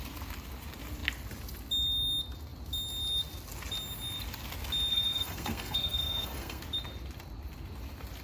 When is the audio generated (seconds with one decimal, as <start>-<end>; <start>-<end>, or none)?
4.9-6.6